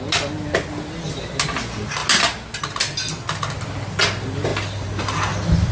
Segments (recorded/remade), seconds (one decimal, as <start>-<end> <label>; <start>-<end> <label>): 0.0-5.7 recorded